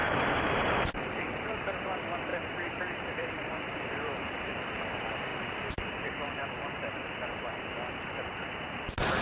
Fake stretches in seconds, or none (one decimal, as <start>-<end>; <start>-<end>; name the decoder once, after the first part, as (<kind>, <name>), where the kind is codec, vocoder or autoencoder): 0.0-1.6 (vocoder, BigVGAN v2); 2.3-4.6; 5.3-7.5